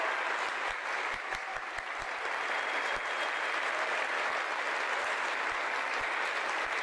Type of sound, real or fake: real